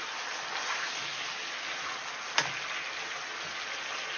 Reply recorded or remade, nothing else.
recorded